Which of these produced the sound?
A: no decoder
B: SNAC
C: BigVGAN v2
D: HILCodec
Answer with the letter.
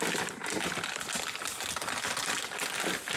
A